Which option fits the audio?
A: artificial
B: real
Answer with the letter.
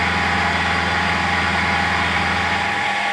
B